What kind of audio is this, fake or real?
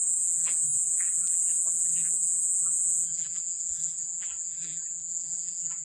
fake